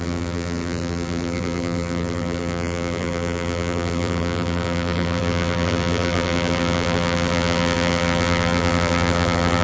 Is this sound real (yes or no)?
no